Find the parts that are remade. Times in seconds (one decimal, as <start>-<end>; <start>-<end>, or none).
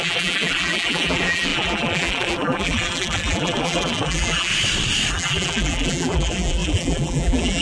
0.0-4.5; 5.1-7.6